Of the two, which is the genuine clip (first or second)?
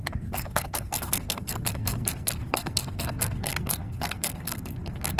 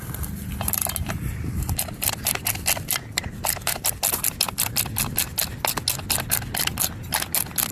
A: second